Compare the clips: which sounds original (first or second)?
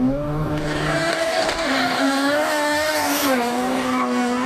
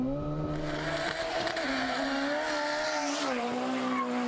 second